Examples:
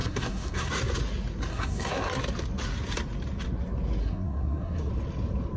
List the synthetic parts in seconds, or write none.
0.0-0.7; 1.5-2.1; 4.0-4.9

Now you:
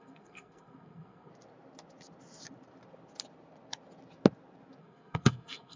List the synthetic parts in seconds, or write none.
0.0-1.3; 4.8-5.8

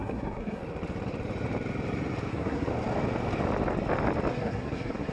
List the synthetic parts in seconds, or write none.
0.0-0.6; 2.3-2.7; 4.3-5.1

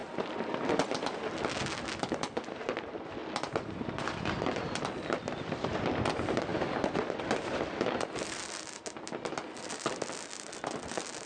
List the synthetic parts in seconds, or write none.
none

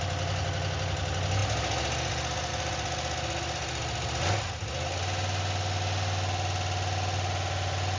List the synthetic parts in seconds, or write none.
none

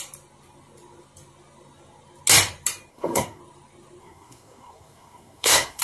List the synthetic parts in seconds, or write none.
2.9-3.4; 4.0-5.8

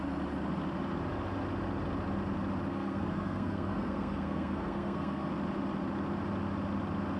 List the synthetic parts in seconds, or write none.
2.7-5.3